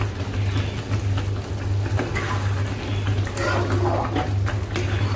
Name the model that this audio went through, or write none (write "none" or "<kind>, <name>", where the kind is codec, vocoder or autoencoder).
none